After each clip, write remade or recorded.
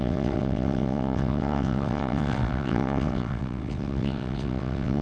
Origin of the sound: remade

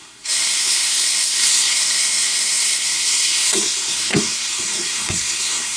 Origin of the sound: remade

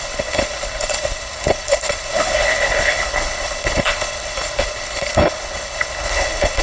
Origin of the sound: remade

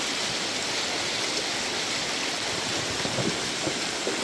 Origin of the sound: recorded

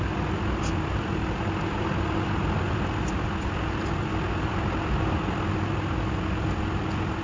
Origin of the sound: recorded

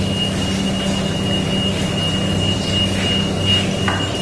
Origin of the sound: recorded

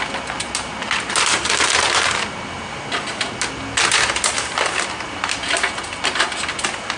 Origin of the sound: recorded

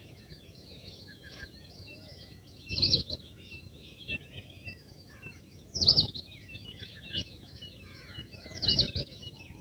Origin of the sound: remade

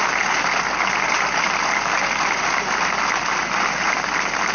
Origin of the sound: recorded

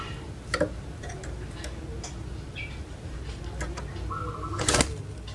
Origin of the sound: recorded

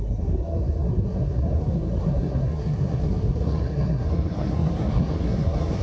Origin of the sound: remade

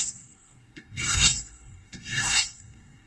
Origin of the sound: remade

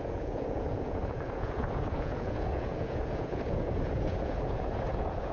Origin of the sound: remade